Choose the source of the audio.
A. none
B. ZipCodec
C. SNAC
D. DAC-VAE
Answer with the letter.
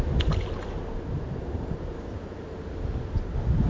A